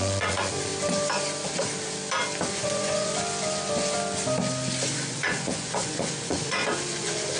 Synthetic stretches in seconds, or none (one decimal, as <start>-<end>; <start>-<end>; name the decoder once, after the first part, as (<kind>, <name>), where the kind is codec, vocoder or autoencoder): 0.0-0.7 (vocoder, Vocos); 2.5-3.1; 4.9-7.4